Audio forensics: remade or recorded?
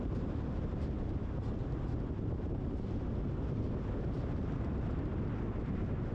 recorded